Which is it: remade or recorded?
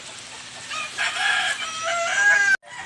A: recorded